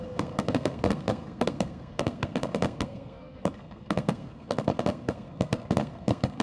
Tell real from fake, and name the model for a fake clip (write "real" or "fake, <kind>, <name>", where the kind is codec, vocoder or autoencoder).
fake, codec, SNAC